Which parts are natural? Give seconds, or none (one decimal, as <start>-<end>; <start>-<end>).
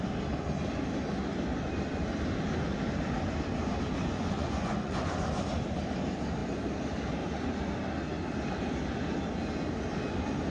0.0-4.0; 5.3-10.5